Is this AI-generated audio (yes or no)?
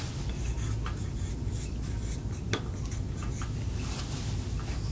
no